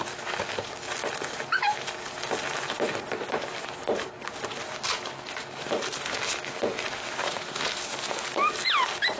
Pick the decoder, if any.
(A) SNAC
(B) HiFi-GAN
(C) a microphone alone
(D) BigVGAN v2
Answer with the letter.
C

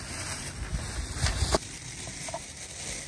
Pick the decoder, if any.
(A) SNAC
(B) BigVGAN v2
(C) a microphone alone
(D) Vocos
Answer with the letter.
C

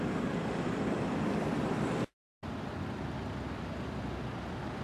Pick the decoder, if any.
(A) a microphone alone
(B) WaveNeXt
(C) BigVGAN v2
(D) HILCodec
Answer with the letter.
A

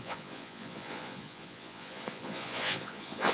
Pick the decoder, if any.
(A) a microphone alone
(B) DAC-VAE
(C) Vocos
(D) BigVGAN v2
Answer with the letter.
C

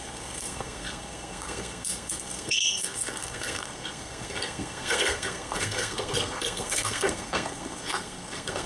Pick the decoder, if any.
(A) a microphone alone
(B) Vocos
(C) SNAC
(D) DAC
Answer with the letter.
C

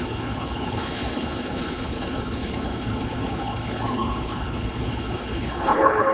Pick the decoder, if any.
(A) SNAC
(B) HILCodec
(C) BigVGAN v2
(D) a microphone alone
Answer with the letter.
B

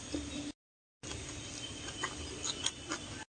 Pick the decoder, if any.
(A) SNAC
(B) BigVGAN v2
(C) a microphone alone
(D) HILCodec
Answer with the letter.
C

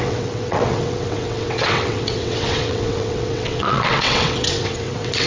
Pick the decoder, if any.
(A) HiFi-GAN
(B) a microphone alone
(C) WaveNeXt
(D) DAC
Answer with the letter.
C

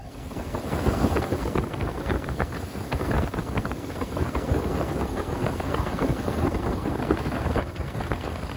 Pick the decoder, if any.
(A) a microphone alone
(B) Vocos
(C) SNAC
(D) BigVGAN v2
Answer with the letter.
C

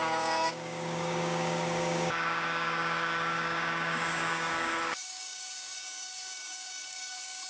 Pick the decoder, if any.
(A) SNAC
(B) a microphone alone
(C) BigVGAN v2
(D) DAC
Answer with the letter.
D